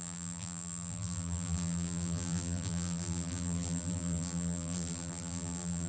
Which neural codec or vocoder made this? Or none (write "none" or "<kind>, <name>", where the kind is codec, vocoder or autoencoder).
vocoder, BigVGAN v2